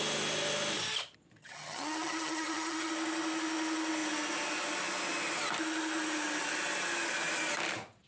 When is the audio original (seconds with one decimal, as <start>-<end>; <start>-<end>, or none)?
0.0-1.4; 2.9-8.1